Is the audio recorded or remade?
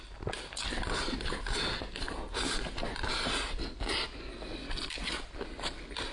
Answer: recorded